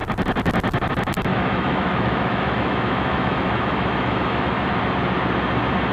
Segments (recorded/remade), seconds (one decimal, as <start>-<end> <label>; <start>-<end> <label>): 0.0-1.3 recorded; 1.3-4.7 remade; 4.7-5.9 recorded